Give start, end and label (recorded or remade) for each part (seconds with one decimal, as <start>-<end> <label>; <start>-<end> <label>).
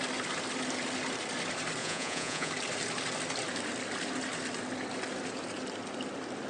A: 0.0-1.8 recorded; 1.8-2.5 remade; 2.5-6.5 recorded